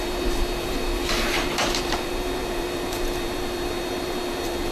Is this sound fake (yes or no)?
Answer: yes